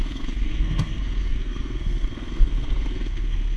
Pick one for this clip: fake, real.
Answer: fake